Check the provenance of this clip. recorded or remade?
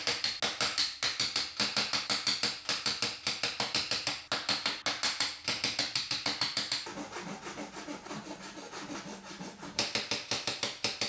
recorded